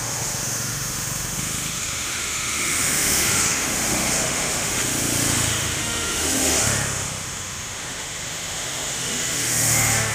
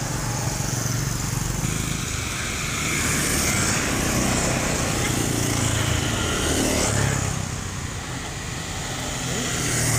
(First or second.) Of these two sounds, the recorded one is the second